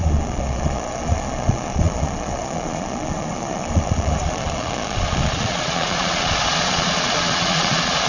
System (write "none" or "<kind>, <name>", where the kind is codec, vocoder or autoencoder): vocoder, Vocos